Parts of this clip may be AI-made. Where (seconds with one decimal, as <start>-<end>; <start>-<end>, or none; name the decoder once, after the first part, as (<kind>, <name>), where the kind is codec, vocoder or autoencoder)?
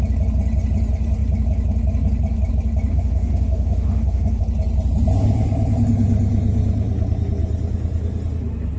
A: 2.9-4.4 (autoencoder, DAC-VAE)